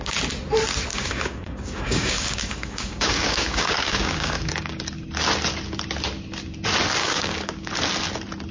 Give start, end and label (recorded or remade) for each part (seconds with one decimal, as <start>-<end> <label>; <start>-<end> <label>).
0.0-0.9 recorded; 0.9-4.8 remade; 4.8-7.0 recorded; 7.0-7.7 remade; 7.7-8.5 recorded